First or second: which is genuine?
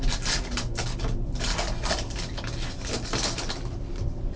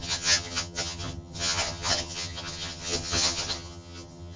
first